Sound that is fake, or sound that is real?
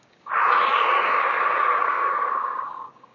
fake